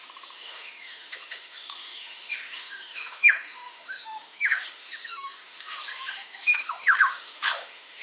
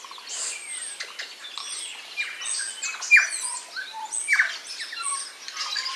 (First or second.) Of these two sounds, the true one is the second